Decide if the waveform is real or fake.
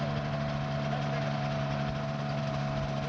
real